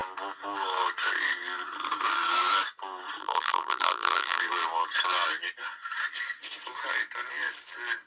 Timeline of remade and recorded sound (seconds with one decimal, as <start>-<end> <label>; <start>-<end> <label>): 0.0-3.2 recorded; 3.2-4.4 remade; 4.4-8.1 recorded